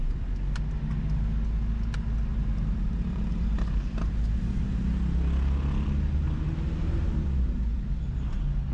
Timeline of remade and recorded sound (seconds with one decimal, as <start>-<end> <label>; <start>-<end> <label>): 0.0-2.3 recorded; 2.3-4.1 remade; 4.1-8.7 recorded